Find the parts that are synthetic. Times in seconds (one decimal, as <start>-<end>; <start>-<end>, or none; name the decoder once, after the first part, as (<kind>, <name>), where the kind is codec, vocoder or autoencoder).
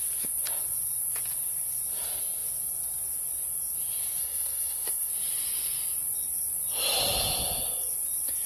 4.2-5.1 (codec, SNAC)